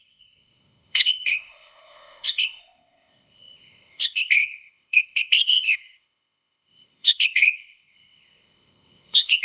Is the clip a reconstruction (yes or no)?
yes